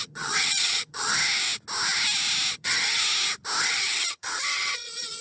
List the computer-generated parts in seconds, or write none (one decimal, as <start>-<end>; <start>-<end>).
0.0-1.2; 2.5-3.0; 3.6-5.2